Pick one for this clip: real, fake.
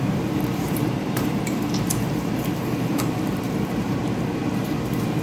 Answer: fake